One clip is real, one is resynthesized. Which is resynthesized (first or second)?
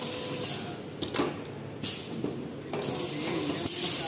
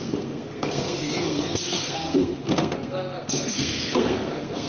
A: second